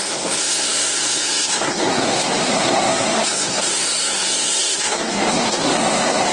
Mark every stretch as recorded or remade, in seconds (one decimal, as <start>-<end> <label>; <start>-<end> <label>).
0.0-6.3 remade